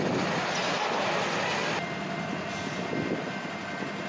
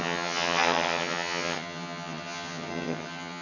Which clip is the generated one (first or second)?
second